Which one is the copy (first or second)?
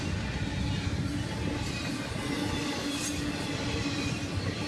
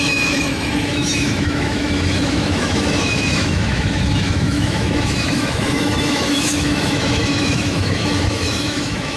second